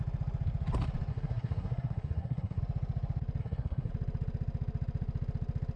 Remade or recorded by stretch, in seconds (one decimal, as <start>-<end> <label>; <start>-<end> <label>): 0.0-1.1 recorded; 1.1-2.6 remade; 2.6-3.4 recorded; 3.4-3.9 remade; 3.9-5.8 recorded

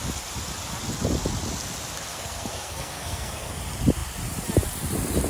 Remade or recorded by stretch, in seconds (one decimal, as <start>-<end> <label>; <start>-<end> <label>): 0.0-2.1 recorded; 2.1-3.6 remade; 3.6-5.3 recorded